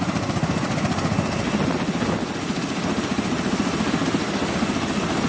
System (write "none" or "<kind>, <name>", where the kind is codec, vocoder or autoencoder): none